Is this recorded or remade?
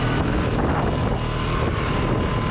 recorded